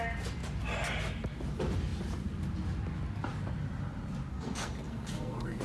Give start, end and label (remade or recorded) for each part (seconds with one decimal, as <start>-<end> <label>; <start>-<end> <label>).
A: 0.0-4.3 recorded; 4.3-5.6 remade